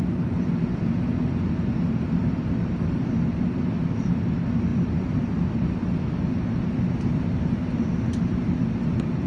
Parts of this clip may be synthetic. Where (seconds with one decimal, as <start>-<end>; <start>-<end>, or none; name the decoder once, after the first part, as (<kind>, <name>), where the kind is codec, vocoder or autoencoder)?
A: none

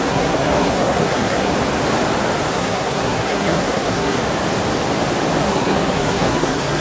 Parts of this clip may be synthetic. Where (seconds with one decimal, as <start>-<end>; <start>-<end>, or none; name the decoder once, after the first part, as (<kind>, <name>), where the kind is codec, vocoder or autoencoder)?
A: 0.0-1.5 (codec, SNAC); 2.5-4.2; 5.4-6.8

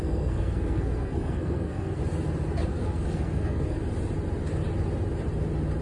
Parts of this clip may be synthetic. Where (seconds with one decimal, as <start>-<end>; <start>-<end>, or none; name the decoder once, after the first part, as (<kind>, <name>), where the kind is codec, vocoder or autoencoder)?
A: 0.0-2.0 (codec, SNAC); 2.7-3.8

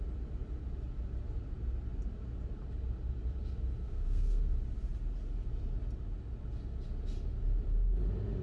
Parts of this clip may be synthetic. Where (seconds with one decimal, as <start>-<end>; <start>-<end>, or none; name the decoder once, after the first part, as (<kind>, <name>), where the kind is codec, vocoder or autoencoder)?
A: 3.8-4.5 (codec, SNAC)

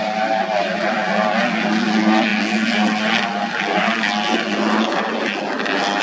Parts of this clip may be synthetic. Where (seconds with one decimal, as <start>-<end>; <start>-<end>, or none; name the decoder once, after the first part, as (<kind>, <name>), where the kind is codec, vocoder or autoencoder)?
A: none